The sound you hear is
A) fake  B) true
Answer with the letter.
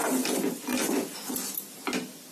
B